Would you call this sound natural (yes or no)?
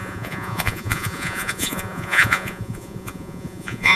no